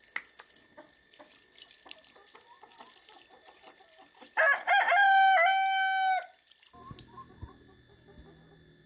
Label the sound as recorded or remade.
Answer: recorded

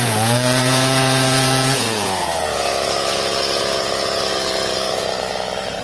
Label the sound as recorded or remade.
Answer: remade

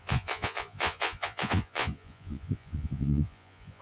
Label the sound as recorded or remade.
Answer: remade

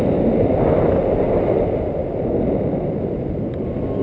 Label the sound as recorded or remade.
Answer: recorded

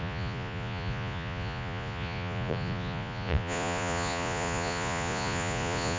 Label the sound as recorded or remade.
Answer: remade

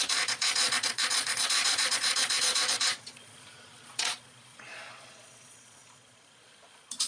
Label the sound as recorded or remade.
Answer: remade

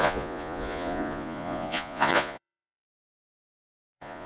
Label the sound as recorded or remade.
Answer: remade